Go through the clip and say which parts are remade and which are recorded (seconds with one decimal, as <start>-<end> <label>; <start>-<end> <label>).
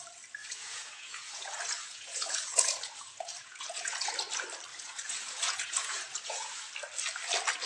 0.0-0.4 recorded; 0.4-4.2 remade; 4.2-4.7 recorded; 4.7-6.6 remade; 6.6-7.7 recorded